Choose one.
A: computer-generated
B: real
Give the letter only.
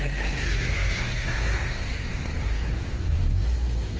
A